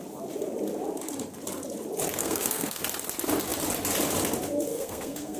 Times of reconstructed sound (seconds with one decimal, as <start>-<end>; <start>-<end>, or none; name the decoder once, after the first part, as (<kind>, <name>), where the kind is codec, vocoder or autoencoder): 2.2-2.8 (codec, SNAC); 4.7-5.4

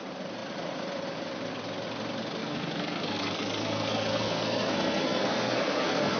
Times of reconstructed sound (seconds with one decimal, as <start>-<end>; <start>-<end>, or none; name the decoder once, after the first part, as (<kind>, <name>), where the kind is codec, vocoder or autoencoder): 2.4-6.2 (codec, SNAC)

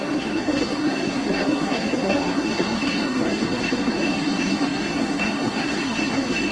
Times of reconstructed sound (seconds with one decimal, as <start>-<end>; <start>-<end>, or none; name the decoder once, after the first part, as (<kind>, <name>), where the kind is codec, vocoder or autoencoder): 0.0-6.5 (codec, SNAC)

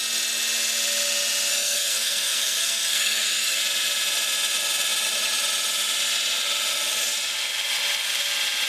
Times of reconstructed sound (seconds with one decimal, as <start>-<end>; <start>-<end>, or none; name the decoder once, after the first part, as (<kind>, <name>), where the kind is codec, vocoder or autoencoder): 1.5-3.6 (codec, SNAC)

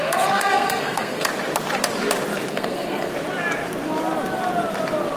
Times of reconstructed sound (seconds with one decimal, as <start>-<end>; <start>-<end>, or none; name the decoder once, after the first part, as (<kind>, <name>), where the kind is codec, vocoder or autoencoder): 0.0-1.3 (codec, SNAC); 2.5-3.1

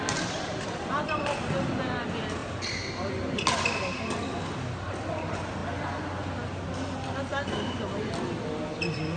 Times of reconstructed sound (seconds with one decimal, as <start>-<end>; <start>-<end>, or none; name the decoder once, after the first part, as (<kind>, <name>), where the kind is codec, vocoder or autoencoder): none